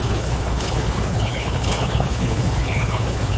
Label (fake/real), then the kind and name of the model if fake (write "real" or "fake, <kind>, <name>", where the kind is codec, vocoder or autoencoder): fake, codec, HILCodec